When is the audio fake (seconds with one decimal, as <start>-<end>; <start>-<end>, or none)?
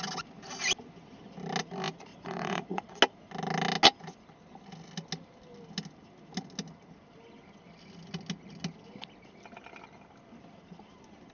2.1-3.0